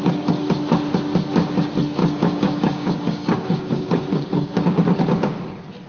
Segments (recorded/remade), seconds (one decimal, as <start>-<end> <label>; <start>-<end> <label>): 0.0-2.0 recorded; 2.0-5.5 remade; 5.5-5.9 recorded